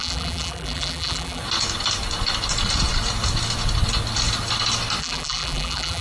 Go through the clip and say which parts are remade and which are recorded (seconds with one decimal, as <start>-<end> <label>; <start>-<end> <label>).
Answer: 0.0-1.4 remade; 1.4-5.0 recorded; 5.0-6.0 remade

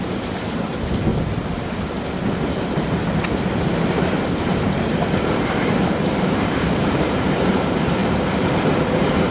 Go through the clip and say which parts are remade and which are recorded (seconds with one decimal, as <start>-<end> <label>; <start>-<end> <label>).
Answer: 0.0-1.1 remade; 1.1-4.4 recorded; 4.4-9.3 remade

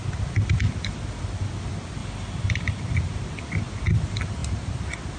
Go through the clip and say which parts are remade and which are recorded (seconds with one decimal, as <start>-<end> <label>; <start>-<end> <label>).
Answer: 0.0-2.0 recorded; 2.0-2.8 remade; 2.8-5.2 recorded